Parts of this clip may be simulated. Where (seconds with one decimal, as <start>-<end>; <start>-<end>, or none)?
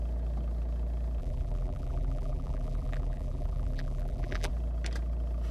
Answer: 1.2-4.5